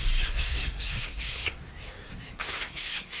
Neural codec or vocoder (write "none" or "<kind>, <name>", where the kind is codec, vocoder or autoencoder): codec, SNAC